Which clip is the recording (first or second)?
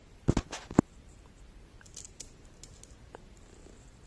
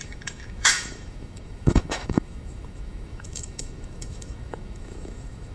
first